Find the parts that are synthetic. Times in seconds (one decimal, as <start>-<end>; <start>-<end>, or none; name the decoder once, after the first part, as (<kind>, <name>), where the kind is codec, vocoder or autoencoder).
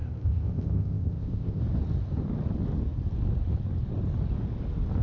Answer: 0.0-1.6 (codec, ZipCodec)